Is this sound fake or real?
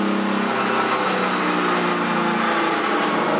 real